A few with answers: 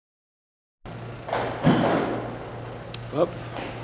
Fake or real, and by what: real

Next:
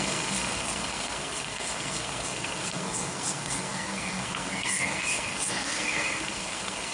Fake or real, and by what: fake, codec, SNAC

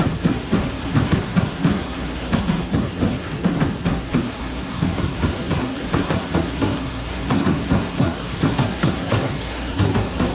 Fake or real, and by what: fake, codec, SNAC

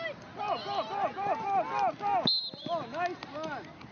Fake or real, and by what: real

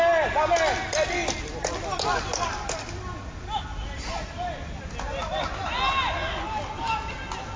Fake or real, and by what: real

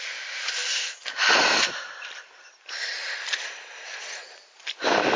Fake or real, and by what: real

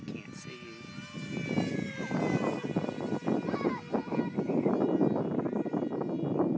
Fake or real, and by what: real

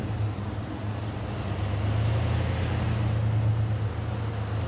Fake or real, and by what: real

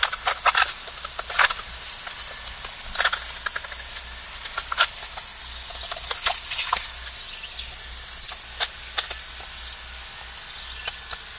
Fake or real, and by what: real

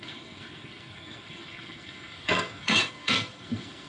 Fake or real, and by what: fake, codec, SNAC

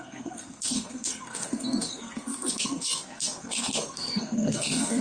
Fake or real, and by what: fake, codec, SNAC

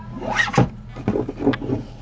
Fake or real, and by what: real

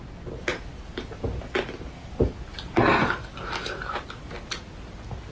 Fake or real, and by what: real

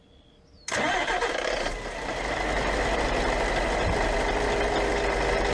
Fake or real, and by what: real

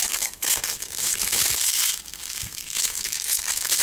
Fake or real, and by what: fake, codec, SNAC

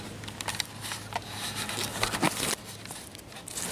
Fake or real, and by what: real